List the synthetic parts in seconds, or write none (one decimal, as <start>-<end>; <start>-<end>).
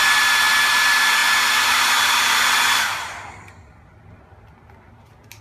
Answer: none